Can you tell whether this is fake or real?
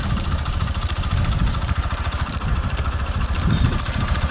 fake